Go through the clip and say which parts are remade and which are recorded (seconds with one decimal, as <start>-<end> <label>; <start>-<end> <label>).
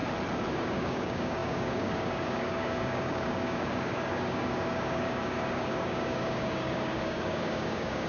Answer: 0.0-0.5 recorded; 0.5-8.1 remade